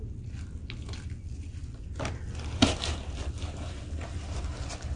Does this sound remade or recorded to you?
recorded